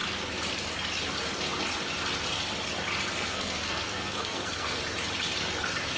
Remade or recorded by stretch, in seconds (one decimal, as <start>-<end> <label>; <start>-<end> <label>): 0.0-3.1 recorded; 3.1-4.8 remade; 4.8-6.0 recorded